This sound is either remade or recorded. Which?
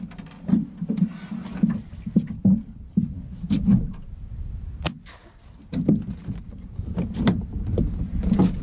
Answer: recorded